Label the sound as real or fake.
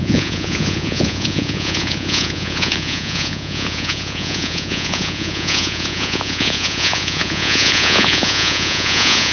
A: fake